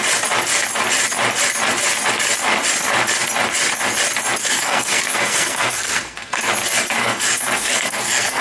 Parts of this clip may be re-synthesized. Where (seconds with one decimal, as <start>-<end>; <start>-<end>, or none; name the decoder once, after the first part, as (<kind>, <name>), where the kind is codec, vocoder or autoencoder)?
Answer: 4.4-6.5 (codec, SNAC); 7.0-8.4